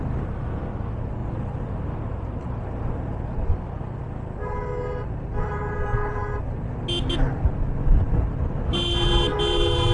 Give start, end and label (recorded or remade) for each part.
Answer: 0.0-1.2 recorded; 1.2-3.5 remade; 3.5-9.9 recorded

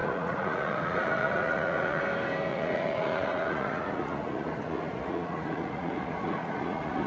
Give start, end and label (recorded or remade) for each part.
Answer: 0.0-2.0 remade; 2.0-2.5 recorded; 2.5-7.1 remade

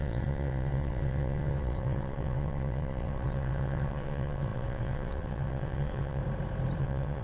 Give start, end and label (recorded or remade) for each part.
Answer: 0.0-6.2 remade; 6.2-6.8 recorded; 6.8-7.2 remade

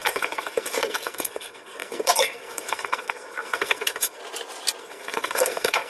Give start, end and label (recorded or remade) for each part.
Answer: 0.0-4.2 remade; 4.2-4.8 recorded; 4.8-5.9 remade

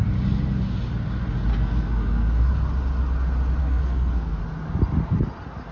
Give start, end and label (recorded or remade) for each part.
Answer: 0.0-1.5 recorded; 1.5-2.5 remade; 2.5-3.6 recorded; 3.6-4.4 remade; 4.4-5.7 recorded

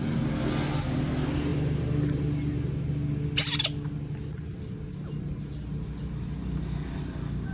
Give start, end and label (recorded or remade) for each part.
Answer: 0.0-7.5 recorded

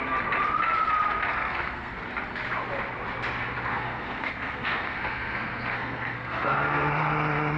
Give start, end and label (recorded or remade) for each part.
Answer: 0.0-1.3 recorded; 1.3-2.0 remade; 2.0-3.7 recorded; 3.7-6.9 remade; 6.9-7.6 recorded

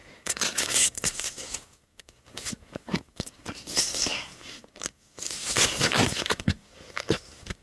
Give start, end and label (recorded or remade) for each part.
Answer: 0.0-7.6 remade